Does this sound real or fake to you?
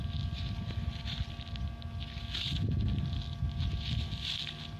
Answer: real